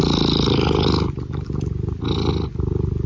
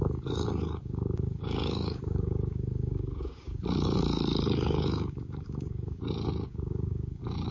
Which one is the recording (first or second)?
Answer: first